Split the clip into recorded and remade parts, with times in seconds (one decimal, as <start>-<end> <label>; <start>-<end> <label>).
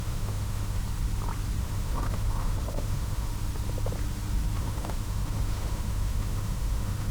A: 0.0-0.8 remade; 0.8-1.6 recorded; 1.6-3.3 remade; 3.3-4.6 recorded; 4.6-7.1 remade